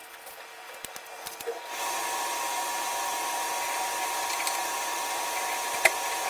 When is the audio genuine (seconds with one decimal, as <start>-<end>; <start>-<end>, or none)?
0.0-6.3